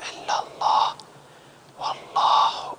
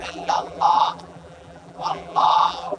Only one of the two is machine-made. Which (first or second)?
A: second